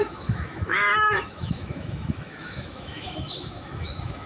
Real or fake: fake